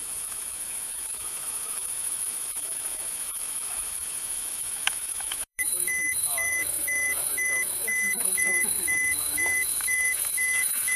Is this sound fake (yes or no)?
yes